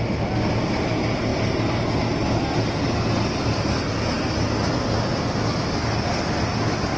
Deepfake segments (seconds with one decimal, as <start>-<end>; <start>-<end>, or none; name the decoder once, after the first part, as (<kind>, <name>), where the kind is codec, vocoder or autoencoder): none